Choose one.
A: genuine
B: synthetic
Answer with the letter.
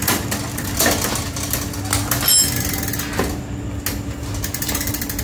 A